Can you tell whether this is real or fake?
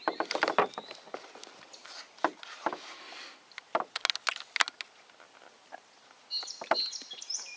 real